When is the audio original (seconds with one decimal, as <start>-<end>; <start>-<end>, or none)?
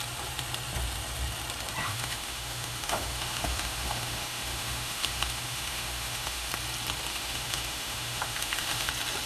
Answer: 0.0-1.8; 6.5-7.1; 8.9-9.3